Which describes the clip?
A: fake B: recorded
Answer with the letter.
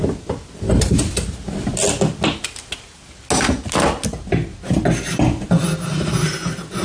B